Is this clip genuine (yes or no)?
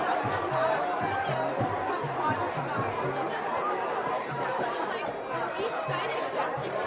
no